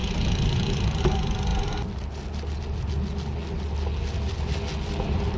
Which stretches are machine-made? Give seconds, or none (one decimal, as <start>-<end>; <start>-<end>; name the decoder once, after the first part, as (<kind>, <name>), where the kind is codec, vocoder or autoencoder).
none